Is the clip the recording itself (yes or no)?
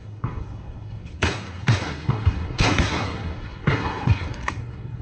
no